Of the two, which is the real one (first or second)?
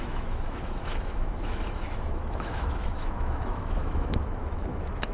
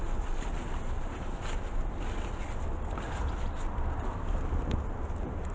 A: second